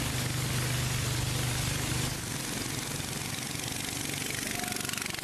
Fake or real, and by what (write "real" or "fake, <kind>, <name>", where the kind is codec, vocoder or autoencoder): real